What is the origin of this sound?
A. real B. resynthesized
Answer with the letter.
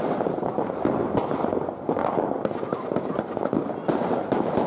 A